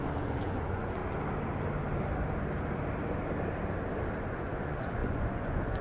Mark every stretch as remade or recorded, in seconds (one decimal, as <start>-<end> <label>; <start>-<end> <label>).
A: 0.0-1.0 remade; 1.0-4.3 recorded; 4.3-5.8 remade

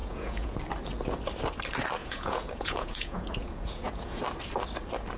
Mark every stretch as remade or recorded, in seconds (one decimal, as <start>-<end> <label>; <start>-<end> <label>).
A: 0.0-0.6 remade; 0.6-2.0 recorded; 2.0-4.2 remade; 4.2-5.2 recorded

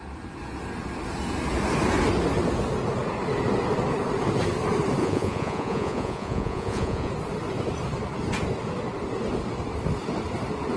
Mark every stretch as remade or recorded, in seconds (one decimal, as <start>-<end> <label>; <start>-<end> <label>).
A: 0.0-5.0 recorded; 5.0-7.1 remade; 7.1-10.8 recorded